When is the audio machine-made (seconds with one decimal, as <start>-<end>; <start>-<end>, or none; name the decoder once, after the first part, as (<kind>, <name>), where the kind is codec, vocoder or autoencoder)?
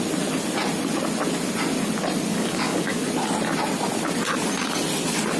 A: 2.3-3.0 (codec, DAC)